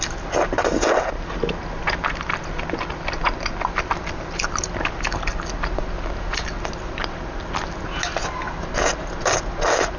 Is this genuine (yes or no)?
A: yes